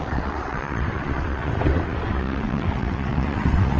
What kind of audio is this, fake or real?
fake